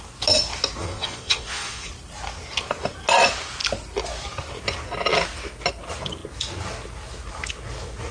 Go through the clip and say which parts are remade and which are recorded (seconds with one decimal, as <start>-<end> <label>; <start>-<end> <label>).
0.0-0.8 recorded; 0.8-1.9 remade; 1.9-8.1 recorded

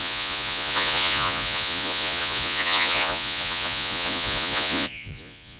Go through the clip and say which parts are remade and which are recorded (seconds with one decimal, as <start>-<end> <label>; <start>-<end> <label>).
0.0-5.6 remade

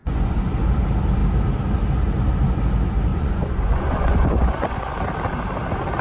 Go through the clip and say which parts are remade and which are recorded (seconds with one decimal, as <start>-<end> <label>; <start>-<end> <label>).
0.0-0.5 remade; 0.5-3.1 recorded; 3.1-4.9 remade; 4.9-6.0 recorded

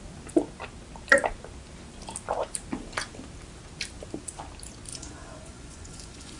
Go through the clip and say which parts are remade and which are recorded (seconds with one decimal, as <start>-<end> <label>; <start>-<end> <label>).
0.0-4.9 recorded; 4.9-6.4 remade

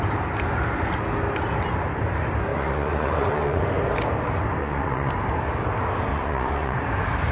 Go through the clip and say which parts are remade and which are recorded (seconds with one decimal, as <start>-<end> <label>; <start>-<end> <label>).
0.0-2.5 recorded; 2.5-3.6 remade; 3.6-4.6 recorded; 4.6-5.1 remade; 5.1-6.1 recorded; 6.1-6.8 remade; 6.8-7.3 recorded

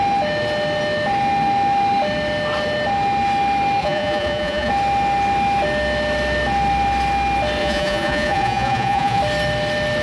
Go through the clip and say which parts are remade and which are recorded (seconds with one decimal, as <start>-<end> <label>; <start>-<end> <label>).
0.0-3.8 recorded; 3.8-4.7 remade; 4.7-7.6 recorded; 7.6-9.2 remade; 9.2-10.0 recorded

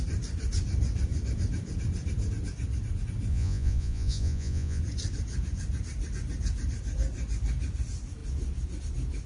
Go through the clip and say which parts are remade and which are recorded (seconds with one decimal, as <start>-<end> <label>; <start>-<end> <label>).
0.0-3.3 recorded; 3.3-4.8 remade; 4.8-9.3 recorded